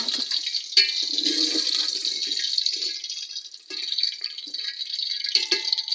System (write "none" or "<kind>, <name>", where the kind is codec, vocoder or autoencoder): none